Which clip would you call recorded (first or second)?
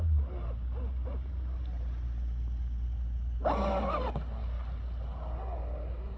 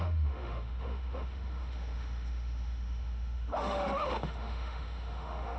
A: first